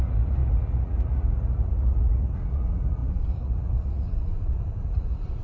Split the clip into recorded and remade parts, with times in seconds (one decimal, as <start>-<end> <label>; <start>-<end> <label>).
0.0-5.4 remade